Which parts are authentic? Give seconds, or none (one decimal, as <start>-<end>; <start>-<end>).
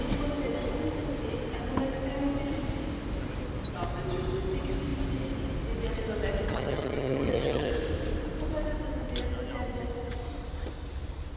0.0-6.5; 7.7-11.4